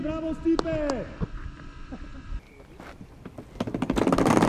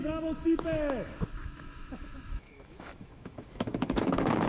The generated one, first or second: second